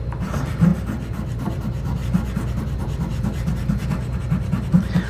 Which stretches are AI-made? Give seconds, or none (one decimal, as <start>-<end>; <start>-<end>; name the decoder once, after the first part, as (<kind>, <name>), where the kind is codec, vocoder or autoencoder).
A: 0.0-2.0 (vocoder, BigVGAN v2); 2.6-5.1